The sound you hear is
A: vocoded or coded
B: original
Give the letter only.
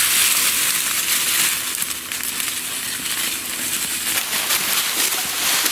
B